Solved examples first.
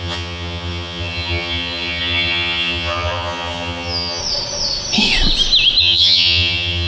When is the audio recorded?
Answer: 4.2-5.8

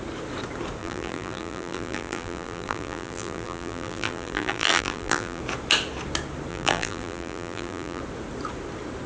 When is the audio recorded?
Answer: 0.0-0.8; 5.4-6.5; 8.0-9.1